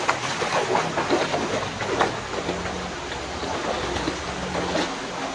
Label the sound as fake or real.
real